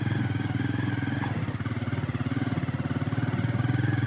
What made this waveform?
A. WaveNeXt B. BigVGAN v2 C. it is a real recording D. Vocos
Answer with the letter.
C